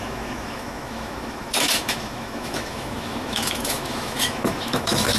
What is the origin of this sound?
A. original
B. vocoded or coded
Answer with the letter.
B